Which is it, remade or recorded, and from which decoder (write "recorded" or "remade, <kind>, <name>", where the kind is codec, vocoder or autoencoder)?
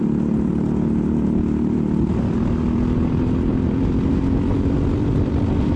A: remade, vocoder, BigVGAN v2